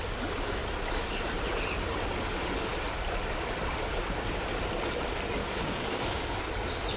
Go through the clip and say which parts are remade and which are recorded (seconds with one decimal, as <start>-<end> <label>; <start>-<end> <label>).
0.0-5.4 recorded; 5.4-6.4 remade; 6.4-7.0 recorded